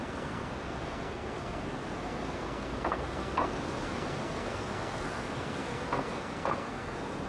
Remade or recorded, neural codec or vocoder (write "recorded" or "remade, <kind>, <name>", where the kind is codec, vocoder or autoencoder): remade, codec, SNAC